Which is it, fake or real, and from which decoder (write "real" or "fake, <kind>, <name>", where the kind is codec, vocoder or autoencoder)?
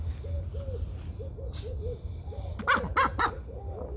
real